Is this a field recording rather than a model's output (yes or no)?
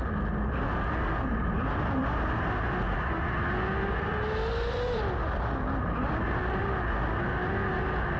yes